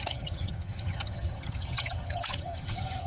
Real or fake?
fake